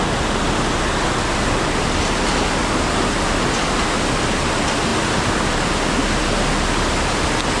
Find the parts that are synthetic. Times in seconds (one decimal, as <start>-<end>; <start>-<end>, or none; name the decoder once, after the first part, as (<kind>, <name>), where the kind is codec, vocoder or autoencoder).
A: none

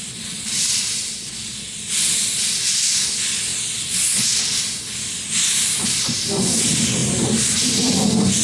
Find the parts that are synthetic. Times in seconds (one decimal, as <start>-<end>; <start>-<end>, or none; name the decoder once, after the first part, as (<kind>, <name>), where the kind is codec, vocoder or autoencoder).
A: 7.0-7.9 (vocoder, BigVGAN v2)

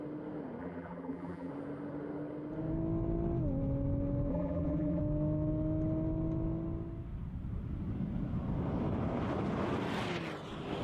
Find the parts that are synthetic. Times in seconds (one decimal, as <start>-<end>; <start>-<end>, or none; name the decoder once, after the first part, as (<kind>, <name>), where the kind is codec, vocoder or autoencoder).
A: 0.6-1.5 (vocoder, BigVGAN v2); 4.3-5.0

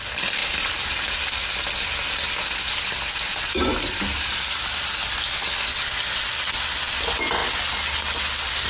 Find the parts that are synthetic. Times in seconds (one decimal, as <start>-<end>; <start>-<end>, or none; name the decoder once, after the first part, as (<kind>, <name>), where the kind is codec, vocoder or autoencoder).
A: 0.4-1.2 (vocoder, BigVGAN v2); 3.6-4.8

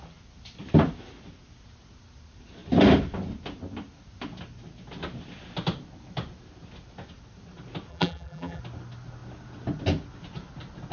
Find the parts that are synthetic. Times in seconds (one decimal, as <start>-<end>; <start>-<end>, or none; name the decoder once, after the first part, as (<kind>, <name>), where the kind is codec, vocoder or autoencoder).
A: 7.9-8.6 (vocoder, BigVGAN v2)